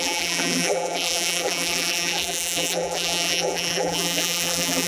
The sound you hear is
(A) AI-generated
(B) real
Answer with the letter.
A